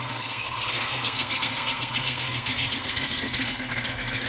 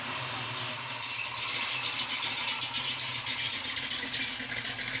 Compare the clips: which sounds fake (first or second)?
first